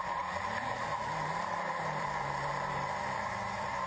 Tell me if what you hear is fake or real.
fake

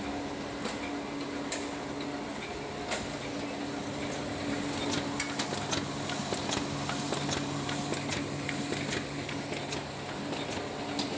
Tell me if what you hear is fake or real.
real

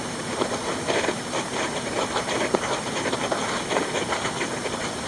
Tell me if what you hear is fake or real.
fake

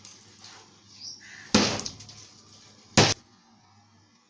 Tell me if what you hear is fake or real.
real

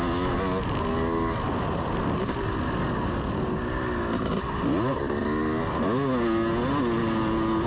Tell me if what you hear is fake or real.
real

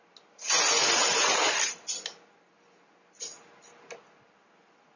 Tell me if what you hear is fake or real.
real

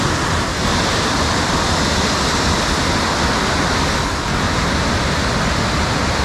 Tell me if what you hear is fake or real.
real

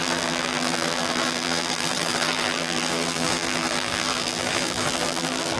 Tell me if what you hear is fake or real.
fake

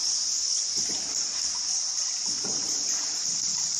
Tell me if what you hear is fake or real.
real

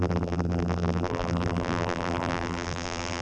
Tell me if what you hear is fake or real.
fake